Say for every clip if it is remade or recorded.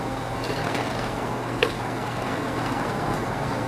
remade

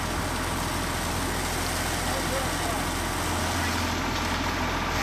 recorded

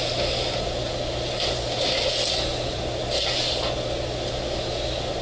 recorded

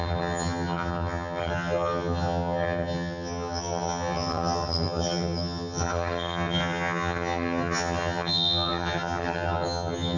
remade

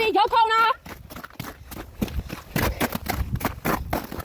recorded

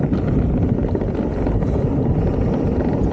recorded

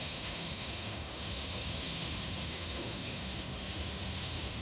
remade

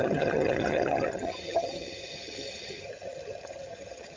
remade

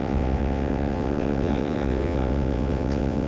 remade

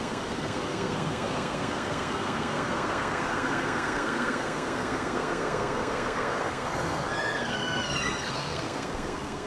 remade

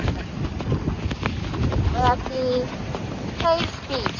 recorded